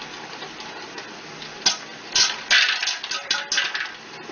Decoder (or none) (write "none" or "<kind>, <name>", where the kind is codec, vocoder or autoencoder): none